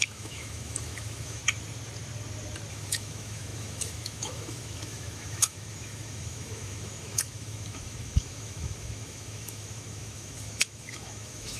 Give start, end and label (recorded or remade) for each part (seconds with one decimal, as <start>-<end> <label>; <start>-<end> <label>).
0.0-1.4 remade; 1.4-2.7 recorded; 2.7-11.6 remade